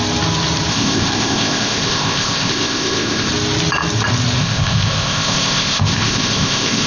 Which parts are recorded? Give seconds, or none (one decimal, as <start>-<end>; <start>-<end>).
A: 0.0-0.7; 3.3-4.4

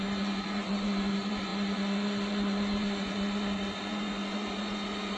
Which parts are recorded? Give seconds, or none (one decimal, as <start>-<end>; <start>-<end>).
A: none